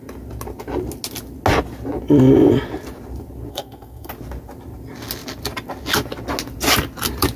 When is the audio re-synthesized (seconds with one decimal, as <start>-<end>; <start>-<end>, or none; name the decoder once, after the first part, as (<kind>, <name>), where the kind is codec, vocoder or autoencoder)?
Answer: 3.5-4.1 (codec, SNAC)